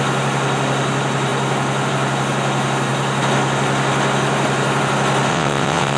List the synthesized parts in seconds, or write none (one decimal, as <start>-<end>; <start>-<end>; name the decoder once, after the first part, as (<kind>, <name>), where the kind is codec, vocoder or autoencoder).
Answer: 5.3-6.0 (vocoder, WaveNeXt)